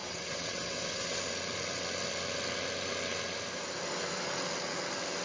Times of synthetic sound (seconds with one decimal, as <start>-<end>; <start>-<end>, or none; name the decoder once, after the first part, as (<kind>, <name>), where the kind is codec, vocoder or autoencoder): 0.0-1.2 (vocoder, WaveNeXt)